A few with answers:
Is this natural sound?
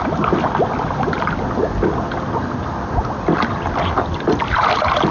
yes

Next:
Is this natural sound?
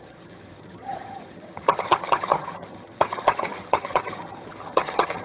no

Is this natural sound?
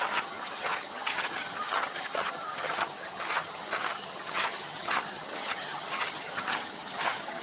no